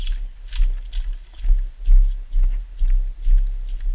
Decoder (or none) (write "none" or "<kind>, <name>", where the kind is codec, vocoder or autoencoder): none